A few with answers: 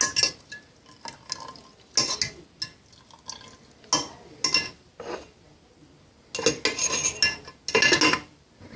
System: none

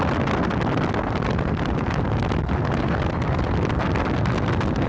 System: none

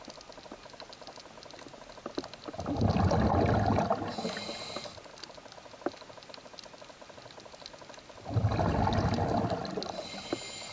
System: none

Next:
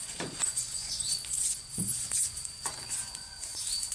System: vocoder, Vocos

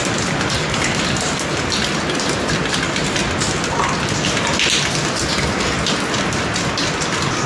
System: none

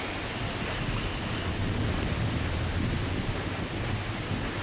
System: none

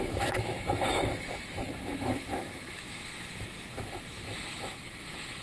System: autoencoder, DAC-VAE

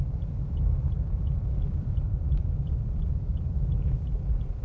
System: vocoder, BigVGAN v2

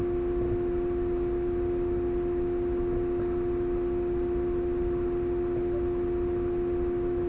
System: none